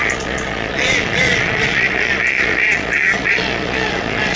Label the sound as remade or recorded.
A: remade